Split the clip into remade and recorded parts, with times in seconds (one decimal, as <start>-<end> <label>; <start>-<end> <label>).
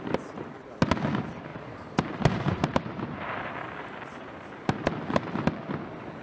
0.0-1.5 recorded; 1.5-5.2 remade; 5.2-6.2 recorded